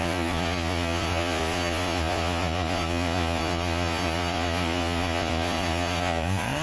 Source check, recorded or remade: remade